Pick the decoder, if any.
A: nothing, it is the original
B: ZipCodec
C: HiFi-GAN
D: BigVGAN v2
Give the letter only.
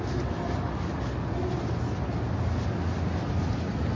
A